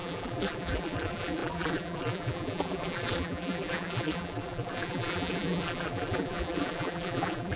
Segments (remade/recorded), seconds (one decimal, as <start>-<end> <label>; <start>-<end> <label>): 0.0-7.6 remade